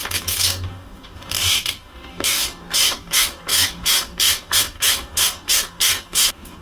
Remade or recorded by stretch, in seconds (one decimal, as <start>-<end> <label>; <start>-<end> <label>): 0.0-6.6 remade